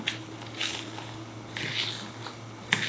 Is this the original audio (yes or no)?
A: yes